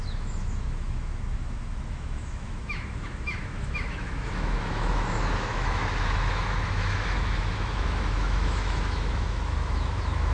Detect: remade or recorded remade